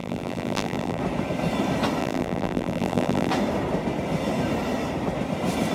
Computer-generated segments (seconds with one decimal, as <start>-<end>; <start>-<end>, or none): 0.0-1.0; 2.0-3.3